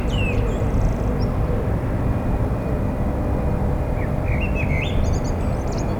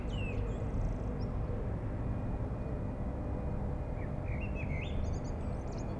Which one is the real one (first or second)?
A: second